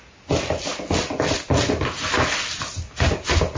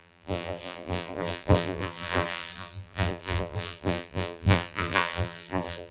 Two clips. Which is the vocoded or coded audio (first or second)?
second